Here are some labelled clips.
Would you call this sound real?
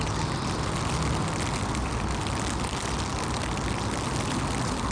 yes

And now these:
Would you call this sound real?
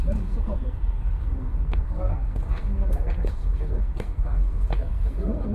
no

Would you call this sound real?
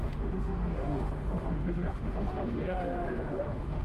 no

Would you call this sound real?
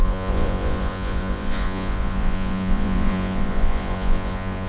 no